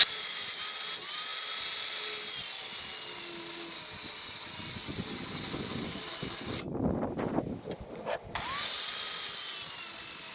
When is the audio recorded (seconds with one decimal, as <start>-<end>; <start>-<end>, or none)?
0.0-10.3